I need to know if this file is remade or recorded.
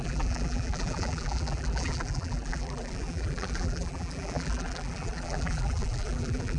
remade